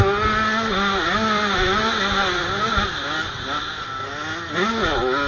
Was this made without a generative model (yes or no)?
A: yes